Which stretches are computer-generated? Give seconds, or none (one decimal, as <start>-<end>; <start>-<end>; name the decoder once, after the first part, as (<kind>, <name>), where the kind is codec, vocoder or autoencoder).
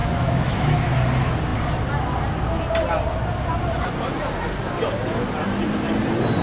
0.0-0.9 (autoencoder, DAC-VAE)